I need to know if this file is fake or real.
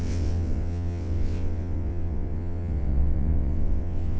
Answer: fake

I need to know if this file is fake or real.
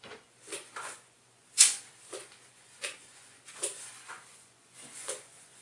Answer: fake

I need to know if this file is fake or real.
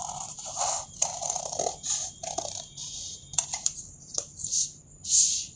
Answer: fake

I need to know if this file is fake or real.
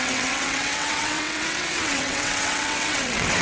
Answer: fake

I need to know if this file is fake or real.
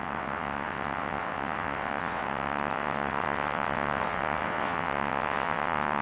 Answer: fake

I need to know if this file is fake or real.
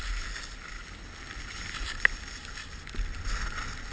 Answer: real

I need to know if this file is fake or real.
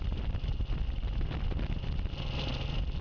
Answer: real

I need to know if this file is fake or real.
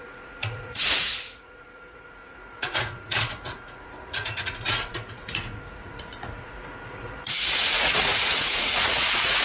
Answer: fake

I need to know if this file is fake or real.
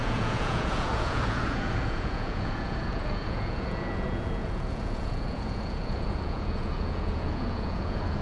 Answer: fake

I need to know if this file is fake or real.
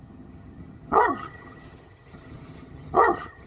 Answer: fake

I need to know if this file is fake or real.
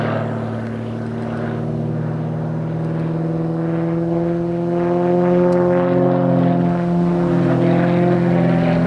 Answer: real